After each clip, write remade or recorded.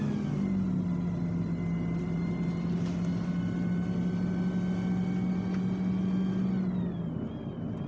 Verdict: recorded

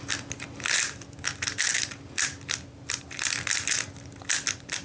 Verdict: recorded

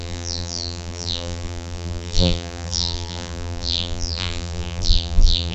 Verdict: remade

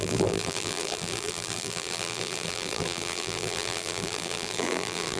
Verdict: remade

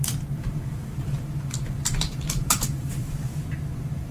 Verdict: remade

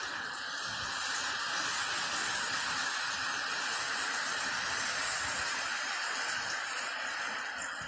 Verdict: recorded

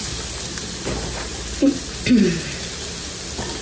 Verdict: recorded